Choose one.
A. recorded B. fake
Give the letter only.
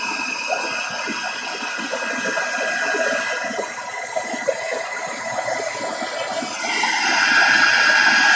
A